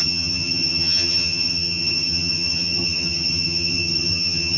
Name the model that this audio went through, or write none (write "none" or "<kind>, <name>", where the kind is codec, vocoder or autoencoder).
vocoder, HiFi-GAN